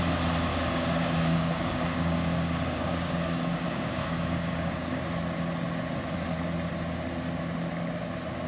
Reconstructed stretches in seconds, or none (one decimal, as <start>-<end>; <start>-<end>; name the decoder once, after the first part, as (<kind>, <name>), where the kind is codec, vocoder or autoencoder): 0.5-5.0 (codec, DAC)